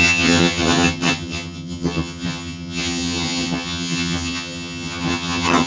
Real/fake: fake